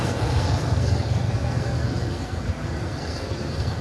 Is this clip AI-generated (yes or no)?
yes